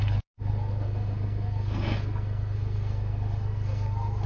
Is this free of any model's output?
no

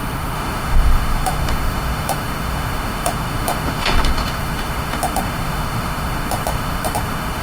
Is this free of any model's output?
no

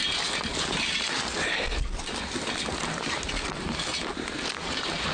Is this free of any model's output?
yes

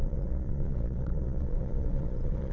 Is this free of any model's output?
no